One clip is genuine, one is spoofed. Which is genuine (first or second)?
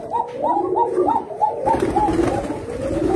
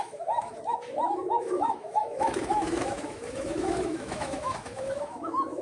first